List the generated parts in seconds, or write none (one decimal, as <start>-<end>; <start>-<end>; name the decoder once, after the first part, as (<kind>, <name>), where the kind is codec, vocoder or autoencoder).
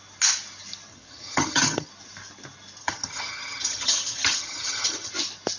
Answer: 0.9-1.9 (vocoder, HiFi-GAN); 2.8-5.1